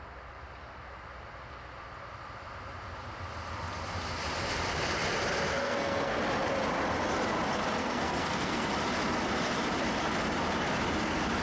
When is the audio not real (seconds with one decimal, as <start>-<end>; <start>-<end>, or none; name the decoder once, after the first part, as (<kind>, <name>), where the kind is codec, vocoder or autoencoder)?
5.6-6.2 (codec, SNAC); 7.8-8.7